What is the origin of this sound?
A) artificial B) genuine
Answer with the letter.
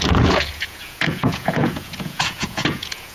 A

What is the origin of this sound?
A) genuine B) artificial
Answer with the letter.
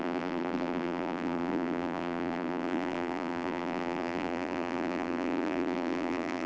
B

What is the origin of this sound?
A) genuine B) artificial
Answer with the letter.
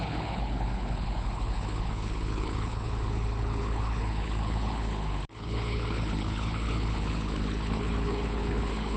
B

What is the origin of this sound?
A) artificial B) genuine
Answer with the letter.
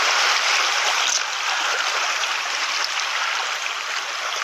B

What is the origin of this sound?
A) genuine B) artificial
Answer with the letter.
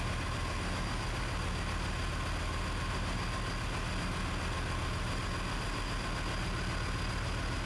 A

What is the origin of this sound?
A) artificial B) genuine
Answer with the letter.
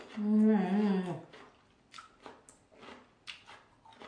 B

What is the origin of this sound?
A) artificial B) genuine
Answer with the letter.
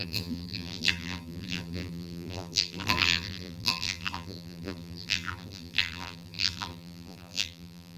A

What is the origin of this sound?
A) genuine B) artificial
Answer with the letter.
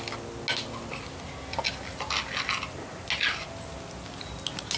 A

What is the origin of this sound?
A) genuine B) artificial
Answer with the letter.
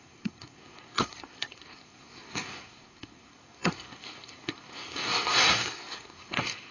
B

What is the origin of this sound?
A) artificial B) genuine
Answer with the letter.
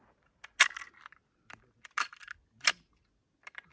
B